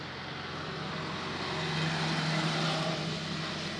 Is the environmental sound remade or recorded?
recorded